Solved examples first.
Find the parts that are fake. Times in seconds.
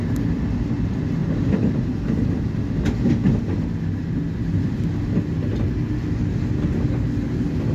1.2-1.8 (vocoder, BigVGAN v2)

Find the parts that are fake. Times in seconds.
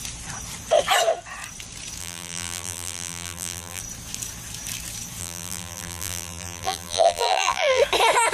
2.0-3.8 (vocoder, BigVGAN v2); 5.2-7.8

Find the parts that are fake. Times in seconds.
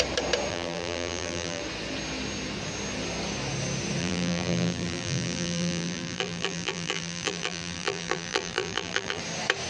0.5-1.6 (vocoder, BigVGAN v2); 4.0-9.2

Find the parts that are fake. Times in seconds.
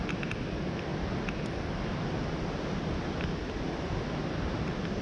none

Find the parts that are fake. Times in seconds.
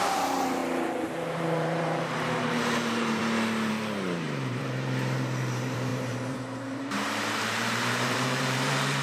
0.0-3.2 (vocoder, BigVGAN v2); 3.7-9.0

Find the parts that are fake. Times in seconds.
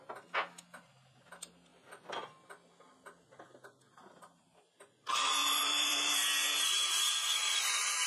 5.4-8.1 (vocoder, BigVGAN v2)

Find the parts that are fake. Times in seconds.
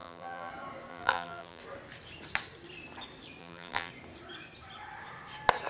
0.0-0.5 (vocoder, BigVGAN v2); 0.9-1.6; 3.4-3.9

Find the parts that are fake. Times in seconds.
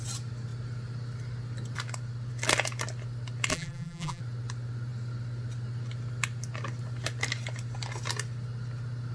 3.5-4.2 (vocoder, BigVGAN v2)